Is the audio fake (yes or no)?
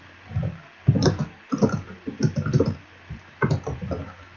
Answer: no